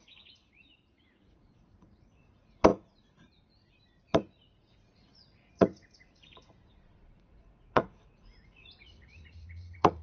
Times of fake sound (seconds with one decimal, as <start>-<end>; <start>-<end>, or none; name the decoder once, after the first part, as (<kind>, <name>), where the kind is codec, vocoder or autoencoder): 0.0-10.0 (vocoder, Vocos)